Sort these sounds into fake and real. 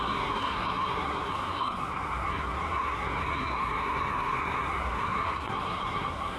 fake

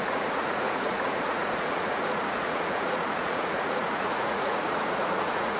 fake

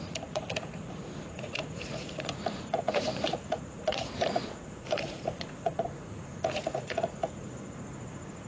fake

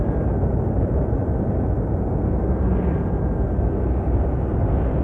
real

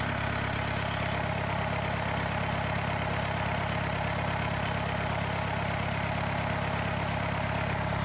real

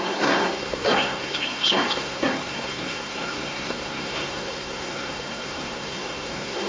fake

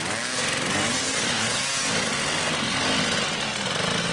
real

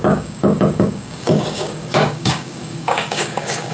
fake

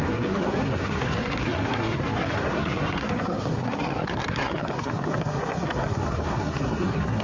fake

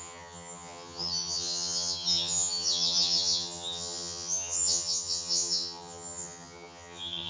fake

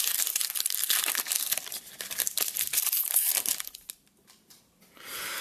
fake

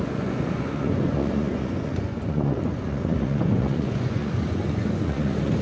fake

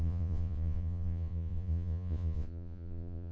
fake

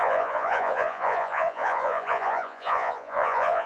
fake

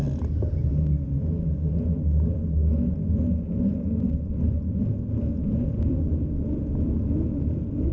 real